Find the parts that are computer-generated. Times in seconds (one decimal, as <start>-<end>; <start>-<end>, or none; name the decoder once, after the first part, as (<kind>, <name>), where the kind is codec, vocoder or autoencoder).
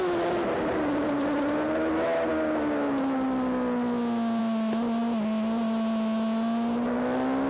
none